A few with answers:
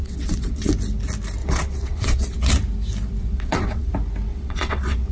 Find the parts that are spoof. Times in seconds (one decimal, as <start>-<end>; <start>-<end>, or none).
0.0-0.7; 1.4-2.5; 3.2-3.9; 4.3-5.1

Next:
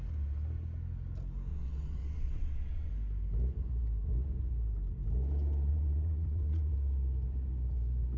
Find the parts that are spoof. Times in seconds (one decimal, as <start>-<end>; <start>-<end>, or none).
1.5-2.9; 5.7-6.7

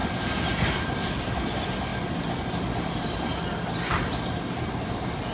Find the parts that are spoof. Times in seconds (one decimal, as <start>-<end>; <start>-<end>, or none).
none